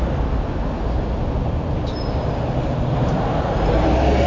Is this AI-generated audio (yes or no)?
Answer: no